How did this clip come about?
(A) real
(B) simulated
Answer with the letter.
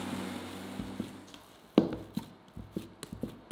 A